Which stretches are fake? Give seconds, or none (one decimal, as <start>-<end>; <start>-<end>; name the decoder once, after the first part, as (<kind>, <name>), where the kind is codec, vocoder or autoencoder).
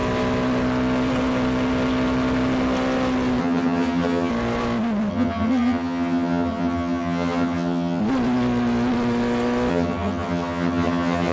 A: 3.4-4.3 (vocoder, HiFi-GAN); 5.1-8.0; 9.7-11.3